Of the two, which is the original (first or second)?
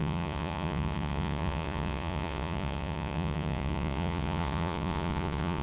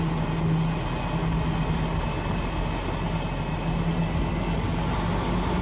second